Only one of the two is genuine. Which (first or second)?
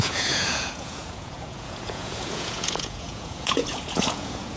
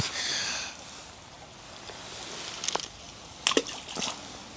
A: second